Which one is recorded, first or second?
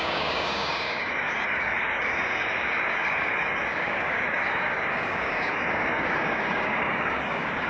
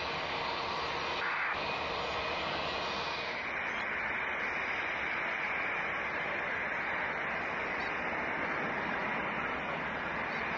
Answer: second